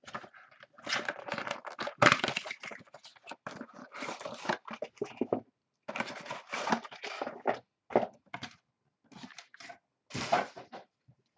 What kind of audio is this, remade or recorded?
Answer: recorded